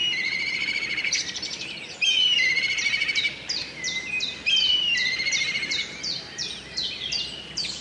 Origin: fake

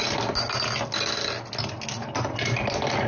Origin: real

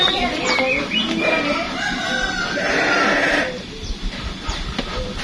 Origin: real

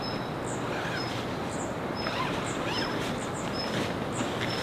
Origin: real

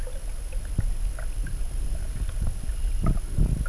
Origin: real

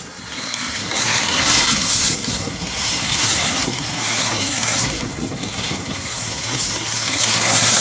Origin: fake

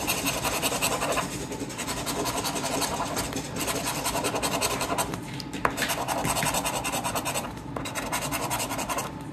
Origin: fake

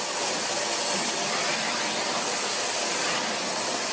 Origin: real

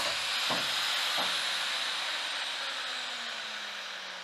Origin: real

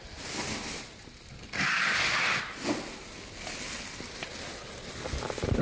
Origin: real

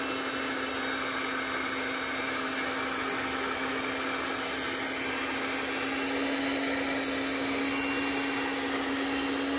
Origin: real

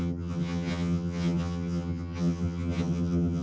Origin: fake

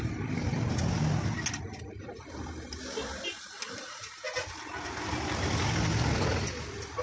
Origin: real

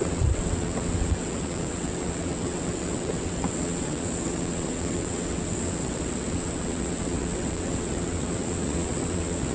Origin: fake